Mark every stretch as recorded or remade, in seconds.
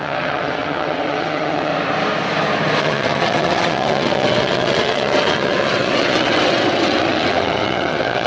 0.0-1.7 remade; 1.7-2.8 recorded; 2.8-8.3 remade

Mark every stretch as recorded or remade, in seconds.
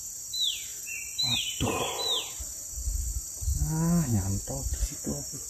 0.0-3.5 recorded; 3.5-4.2 remade; 4.2-5.5 recorded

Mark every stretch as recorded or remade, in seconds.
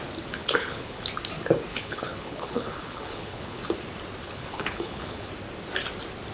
0.0-0.4 recorded; 0.4-1.0 remade; 1.0-1.7 recorded; 1.7-3.6 remade; 3.6-4.2 recorded; 4.2-5.3 remade; 5.3-6.3 recorded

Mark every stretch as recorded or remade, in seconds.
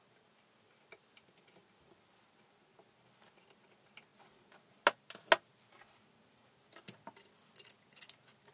0.0-8.5 recorded